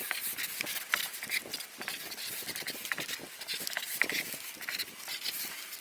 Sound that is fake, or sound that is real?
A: real